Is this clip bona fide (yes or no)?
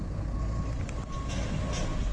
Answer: yes